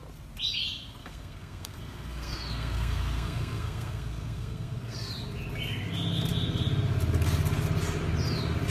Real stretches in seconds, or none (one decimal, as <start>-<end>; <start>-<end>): 0.0-1.0; 5.1-8.7